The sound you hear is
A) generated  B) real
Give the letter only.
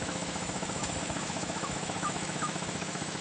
A